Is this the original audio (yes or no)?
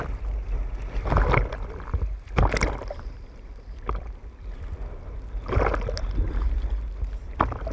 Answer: yes